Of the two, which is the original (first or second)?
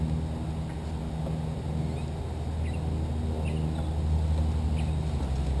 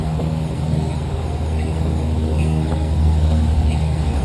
first